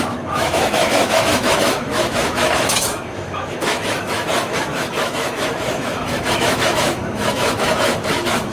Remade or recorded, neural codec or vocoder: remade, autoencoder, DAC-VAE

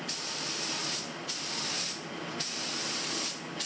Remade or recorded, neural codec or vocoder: recorded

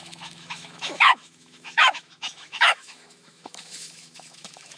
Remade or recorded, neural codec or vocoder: remade, autoencoder, DAC-VAE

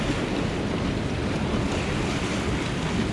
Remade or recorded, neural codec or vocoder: recorded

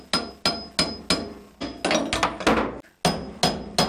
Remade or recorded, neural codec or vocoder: recorded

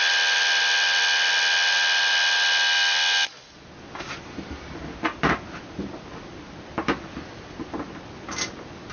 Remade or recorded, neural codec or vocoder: recorded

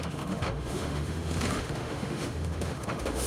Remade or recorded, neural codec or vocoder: remade, autoencoder, DAC-VAE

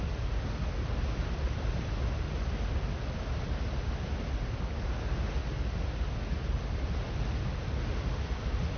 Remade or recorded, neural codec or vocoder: recorded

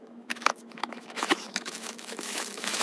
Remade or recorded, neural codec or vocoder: remade, autoencoder, DAC-VAE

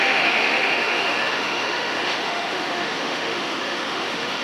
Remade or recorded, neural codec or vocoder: remade, autoencoder, DAC-VAE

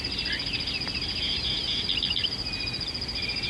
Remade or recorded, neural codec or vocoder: recorded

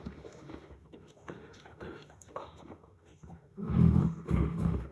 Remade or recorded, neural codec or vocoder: remade, autoencoder, DAC-VAE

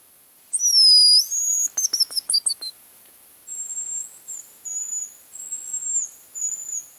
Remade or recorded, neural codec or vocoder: remade, autoencoder, DAC-VAE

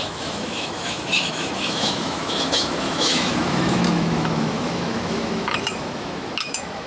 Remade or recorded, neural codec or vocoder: remade, autoencoder, DAC-VAE